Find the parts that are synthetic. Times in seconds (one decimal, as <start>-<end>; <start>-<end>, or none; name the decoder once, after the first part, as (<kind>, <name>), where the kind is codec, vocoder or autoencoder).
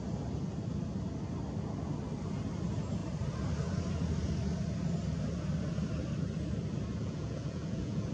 7.0-8.1 (vocoder, Vocos)